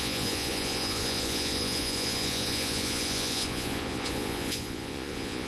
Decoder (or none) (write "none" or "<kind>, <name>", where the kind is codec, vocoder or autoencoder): vocoder, Vocos